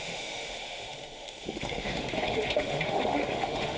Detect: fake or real fake